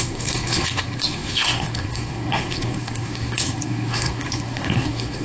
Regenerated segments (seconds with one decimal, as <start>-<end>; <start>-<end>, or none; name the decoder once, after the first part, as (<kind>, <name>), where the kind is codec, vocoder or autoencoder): 0.0-5.2 (codec, SNAC)